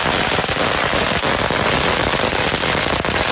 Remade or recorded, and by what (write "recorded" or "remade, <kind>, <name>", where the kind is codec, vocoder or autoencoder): recorded